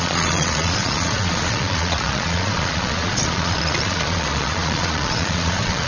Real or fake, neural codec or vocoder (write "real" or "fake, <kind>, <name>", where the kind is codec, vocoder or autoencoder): fake, vocoder, Vocos